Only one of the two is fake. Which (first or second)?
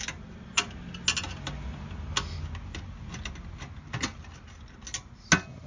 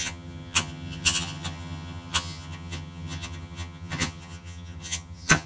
second